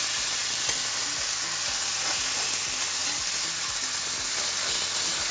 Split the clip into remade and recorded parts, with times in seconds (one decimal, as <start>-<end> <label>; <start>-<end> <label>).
0.0-5.3 recorded